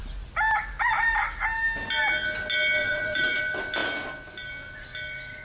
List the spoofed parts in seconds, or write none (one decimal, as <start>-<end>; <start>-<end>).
2.8-3.4

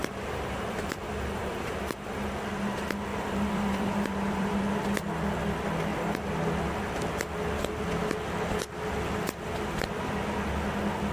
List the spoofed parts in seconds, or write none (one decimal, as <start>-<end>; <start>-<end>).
0.0-2.3; 3.1-4.6; 5.9-6.5

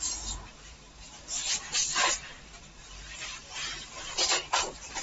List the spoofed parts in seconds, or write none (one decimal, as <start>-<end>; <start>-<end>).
0.0-5.0

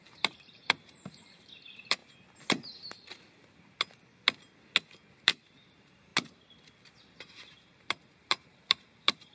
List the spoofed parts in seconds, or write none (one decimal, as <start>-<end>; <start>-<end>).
0.0-2.0; 5.1-6.1; 7.8-9.3